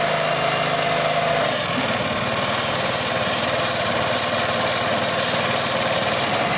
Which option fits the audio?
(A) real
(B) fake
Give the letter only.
A